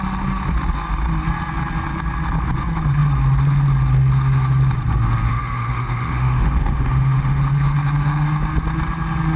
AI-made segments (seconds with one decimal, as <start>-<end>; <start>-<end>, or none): 5.3-7.4